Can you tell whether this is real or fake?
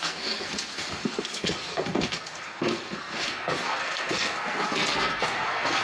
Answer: fake